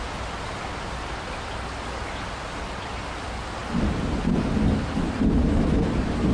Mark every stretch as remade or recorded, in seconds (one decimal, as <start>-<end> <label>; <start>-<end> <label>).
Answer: 0.0-6.3 recorded